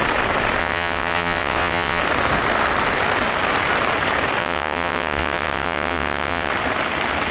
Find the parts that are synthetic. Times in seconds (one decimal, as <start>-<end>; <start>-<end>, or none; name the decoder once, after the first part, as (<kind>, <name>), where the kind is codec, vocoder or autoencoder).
0.6-2.0 (vocoder, WaveNeXt); 4.4-6.5

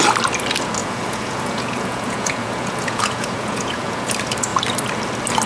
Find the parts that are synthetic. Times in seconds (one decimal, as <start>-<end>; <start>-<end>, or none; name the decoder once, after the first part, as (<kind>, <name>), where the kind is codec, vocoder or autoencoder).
0.8-4.1 (vocoder, Vocos)

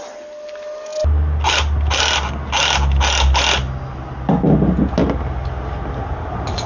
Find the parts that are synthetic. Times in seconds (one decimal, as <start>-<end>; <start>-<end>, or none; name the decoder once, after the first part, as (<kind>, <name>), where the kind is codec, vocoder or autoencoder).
none

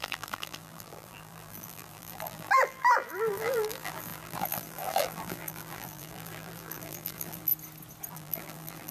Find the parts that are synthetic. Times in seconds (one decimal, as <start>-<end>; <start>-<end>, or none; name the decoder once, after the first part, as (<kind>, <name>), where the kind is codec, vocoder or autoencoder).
0.0-7.5 (vocoder, BigVGAN v2); 8.1-8.9